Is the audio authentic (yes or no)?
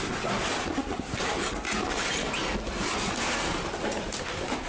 yes